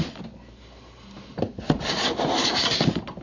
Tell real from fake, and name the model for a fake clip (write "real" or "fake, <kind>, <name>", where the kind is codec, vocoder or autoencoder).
real